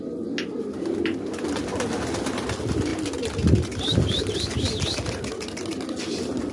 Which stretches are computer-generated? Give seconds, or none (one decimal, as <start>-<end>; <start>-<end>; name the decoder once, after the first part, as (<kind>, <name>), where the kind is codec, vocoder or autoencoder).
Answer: none